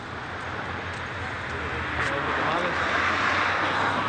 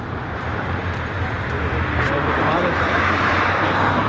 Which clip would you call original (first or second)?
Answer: first